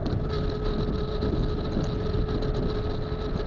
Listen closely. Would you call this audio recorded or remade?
recorded